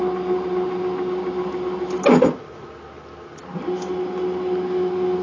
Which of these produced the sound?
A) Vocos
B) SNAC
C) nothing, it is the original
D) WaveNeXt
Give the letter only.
C